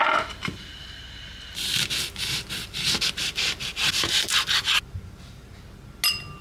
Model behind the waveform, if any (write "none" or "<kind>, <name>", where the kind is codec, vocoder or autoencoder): none